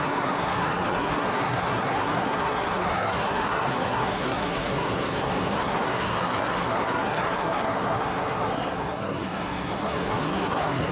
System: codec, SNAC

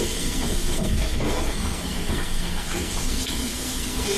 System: codec, SNAC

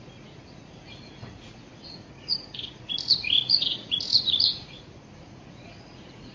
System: vocoder, Vocos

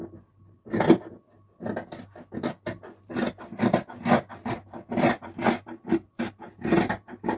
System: none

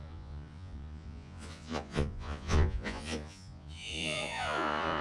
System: vocoder, Vocos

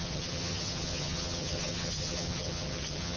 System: vocoder, HiFi-GAN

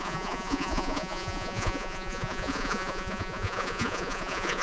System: vocoder, Vocos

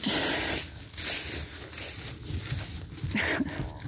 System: none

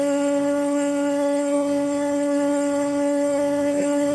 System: codec, SNAC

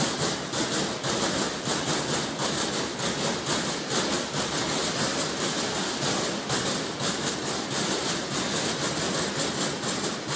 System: none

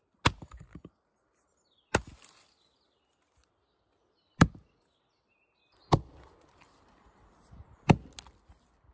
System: none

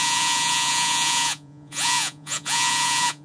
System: vocoder, Vocos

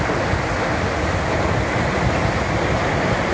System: none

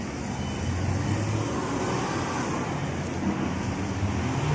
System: none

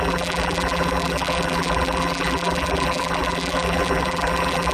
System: vocoder, BigVGAN v2